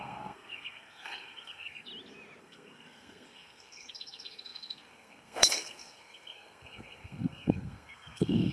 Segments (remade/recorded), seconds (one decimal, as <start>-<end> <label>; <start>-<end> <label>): 0.0-1.9 remade; 1.9-2.4 recorded; 2.4-8.5 remade